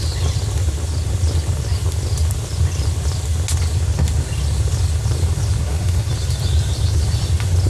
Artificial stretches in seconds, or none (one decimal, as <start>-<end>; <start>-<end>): 5.6-6.1